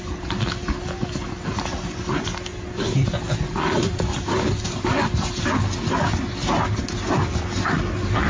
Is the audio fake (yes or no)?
no